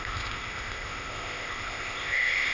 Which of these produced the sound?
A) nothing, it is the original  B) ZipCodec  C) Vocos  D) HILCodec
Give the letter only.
B